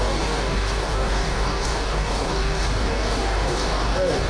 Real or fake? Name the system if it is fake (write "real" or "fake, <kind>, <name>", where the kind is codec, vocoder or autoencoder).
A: fake, codec, DAC